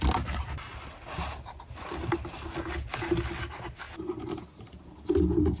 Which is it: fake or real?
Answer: real